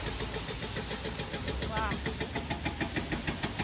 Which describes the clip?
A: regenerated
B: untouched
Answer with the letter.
B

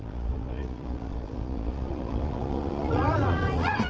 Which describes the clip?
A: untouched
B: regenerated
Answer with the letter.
B